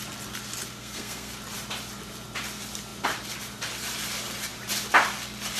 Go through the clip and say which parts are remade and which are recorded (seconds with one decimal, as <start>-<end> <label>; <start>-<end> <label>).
0.0-0.8 recorded; 0.8-1.3 remade; 1.3-5.6 recorded